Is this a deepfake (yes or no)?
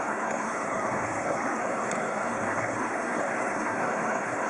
yes